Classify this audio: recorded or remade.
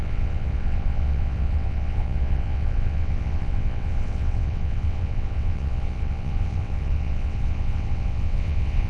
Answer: remade